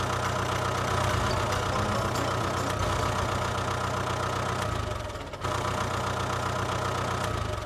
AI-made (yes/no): no